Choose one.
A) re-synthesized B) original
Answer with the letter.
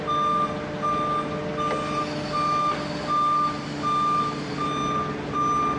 B